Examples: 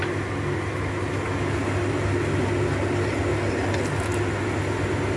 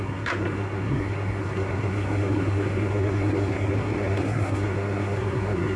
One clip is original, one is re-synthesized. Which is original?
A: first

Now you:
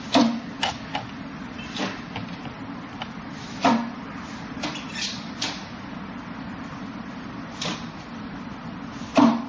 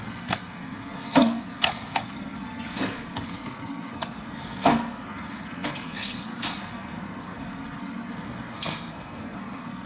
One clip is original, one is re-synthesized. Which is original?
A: first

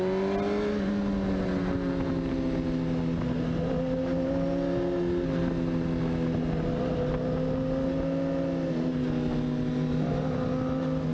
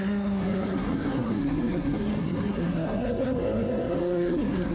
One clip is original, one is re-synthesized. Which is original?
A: first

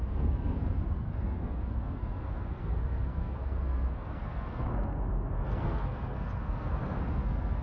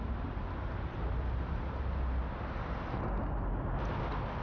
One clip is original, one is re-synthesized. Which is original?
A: second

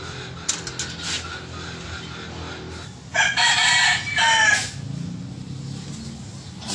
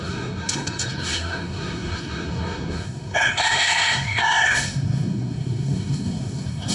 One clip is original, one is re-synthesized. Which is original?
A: first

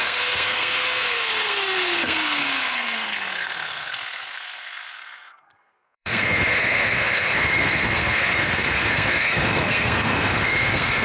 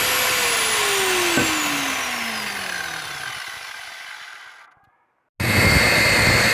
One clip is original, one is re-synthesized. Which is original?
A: second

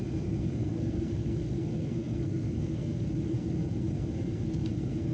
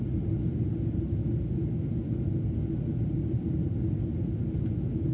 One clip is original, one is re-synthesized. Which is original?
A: second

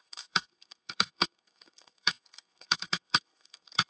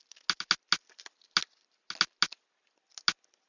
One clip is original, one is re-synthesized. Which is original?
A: second